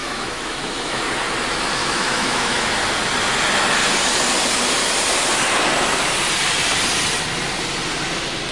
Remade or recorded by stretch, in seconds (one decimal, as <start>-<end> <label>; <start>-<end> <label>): 0.0-1.0 remade; 1.0-1.8 recorded; 1.8-2.7 remade; 2.7-8.5 recorded